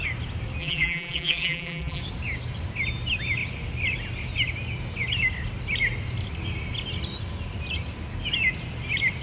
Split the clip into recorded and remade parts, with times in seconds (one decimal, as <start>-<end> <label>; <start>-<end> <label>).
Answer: 0.0-0.6 recorded; 0.6-2.0 remade; 2.0-9.2 recorded